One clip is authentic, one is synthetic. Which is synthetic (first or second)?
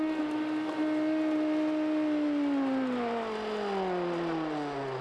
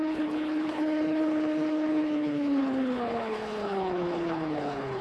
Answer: second